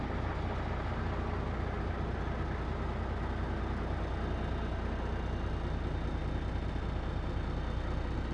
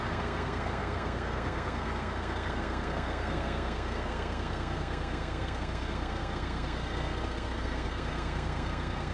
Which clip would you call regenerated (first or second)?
second